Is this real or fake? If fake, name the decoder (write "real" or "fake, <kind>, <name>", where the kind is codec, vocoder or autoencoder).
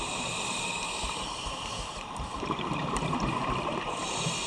fake, vocoder, BigVGAN v2